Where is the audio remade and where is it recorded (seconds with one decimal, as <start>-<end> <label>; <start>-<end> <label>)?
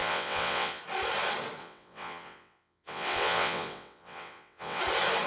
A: 0.0-0.8 remade; 0.8-1.6 recorded; 1.6-4.8 remade; 4.8-5.3 recorded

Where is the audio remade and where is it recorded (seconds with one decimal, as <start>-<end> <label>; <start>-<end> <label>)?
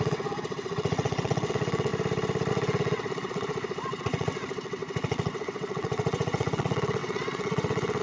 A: 0.0-1.9 remade; 1.9-2.5 recorded; 2.5-8.0 remade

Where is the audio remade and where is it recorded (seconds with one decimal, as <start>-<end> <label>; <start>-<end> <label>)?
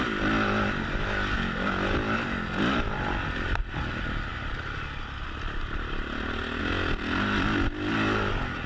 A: 0.0-8.7 recorded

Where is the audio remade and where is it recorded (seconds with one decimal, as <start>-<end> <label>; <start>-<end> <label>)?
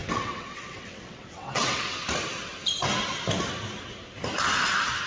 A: 0.0-1.8 remade; 1.8-5.1 recorded